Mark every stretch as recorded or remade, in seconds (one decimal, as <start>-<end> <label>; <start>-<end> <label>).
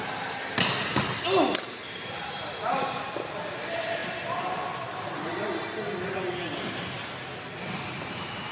0.0-8.5 recorded